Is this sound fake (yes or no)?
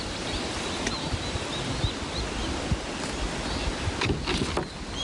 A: no